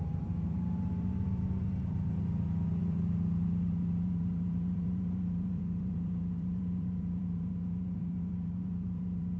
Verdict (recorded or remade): remade